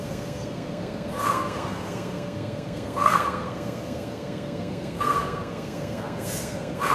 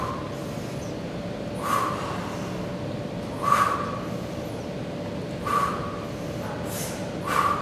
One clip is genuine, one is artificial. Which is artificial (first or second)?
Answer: first